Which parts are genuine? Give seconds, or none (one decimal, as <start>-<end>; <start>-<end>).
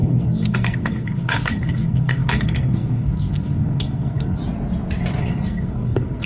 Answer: 4.4-5.2